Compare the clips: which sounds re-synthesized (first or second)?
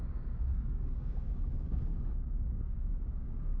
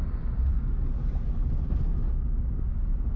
first